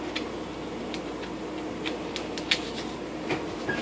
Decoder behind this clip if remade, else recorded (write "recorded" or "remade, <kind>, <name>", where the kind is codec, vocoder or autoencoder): recorded